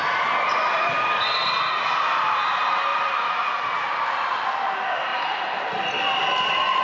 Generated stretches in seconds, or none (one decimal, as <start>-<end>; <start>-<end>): 2.9-3.6; 5.1-5.8